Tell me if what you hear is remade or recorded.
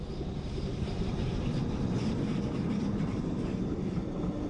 recorded